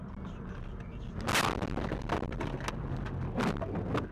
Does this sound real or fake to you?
real